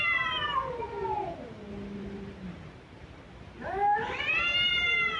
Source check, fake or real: fake